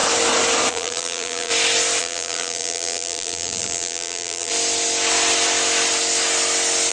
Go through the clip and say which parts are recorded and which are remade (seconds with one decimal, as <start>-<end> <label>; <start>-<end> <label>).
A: 0.0-0.7 recorded; 0.7-1.5 remade; 1.5-2.0 recorded; 2.0-4.5 remade; 4.5-6.9 recorded